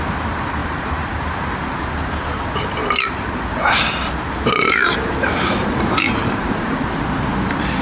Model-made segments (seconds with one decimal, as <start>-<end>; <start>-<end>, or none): 0.6-1.8; 2.8-6.8